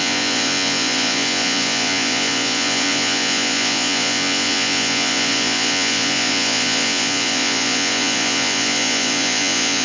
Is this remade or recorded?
remade